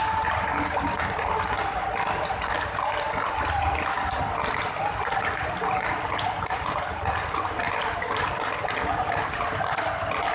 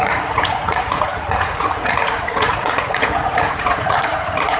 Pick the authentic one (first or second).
first